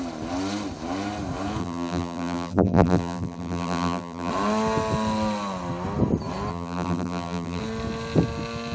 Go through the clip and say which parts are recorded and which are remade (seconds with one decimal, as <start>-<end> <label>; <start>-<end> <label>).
0.0-1.6 recorded; 1.6-4.3 remade; 4.3-6.5 recorded; 6.5-7.6 remade; 7.6-8.7 recorded